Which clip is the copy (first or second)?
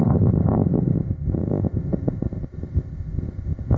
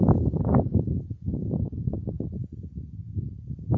first